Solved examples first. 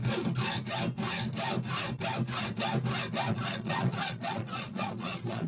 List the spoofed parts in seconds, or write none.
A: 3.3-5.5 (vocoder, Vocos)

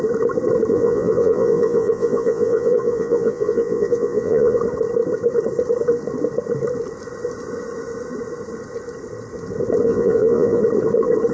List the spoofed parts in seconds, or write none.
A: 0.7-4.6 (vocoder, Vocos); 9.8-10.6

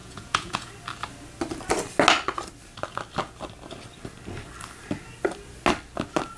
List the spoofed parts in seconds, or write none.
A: 0.0-0.7 (vocoder, Vocos)